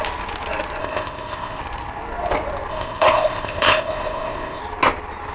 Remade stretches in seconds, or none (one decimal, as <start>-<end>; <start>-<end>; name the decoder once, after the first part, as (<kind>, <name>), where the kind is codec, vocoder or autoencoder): 0.8-1.6 (codec, ZipCodec); 2.7-4.6